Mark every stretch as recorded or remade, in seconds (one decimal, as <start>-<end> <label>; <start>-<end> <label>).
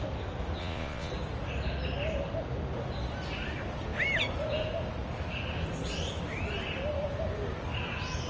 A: 0.0-0.6 recorded; 0.6-1.1 remade; 1.1-8.3 recorded